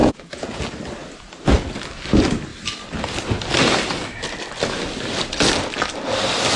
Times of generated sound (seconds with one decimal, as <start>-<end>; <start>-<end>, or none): 0.0-0.6